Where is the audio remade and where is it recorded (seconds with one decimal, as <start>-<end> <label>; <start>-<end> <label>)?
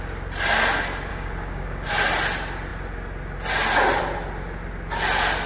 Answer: 0.0-1.1 recorded; 1.1-1.9 remade; 1.9-5.5 recorded